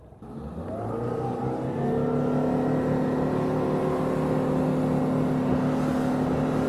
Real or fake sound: real